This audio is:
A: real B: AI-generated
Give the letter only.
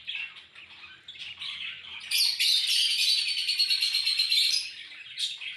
A